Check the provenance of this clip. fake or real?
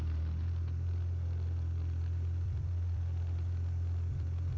real